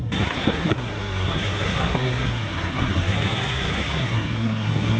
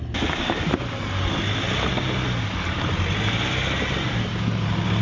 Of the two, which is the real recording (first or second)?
second